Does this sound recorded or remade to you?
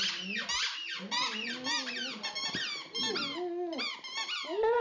recorded